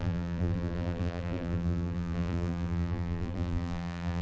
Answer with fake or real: fake